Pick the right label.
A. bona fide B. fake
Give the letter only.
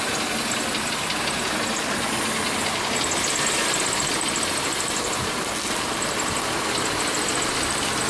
A